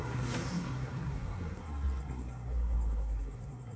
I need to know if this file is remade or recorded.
remade